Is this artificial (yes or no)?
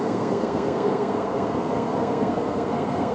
yes